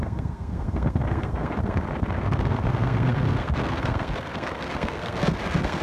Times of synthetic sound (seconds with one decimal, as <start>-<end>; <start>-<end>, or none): 0.0-5.8